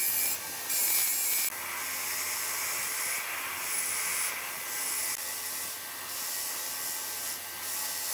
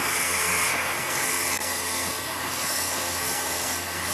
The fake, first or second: second